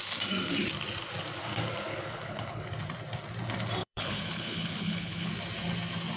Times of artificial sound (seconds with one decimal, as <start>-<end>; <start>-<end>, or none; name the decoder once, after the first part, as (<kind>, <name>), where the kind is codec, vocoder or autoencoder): 1.9-2.6 (codec, HILCodec); 3.8-5.3